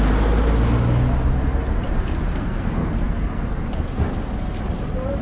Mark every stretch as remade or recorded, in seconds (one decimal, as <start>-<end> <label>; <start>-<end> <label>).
0.0-2.3 recorded; 2.3-3.5 remade; 3.5-5.2 recorded